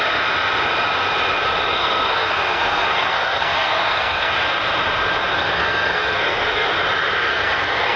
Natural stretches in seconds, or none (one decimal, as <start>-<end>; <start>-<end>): 0.0-1.7; 4.3-5.3; 6.7-7.3